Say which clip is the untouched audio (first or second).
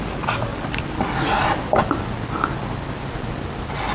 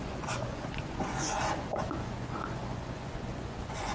first